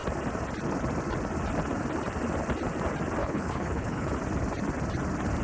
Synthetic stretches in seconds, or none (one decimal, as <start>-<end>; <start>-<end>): 3.2-4.1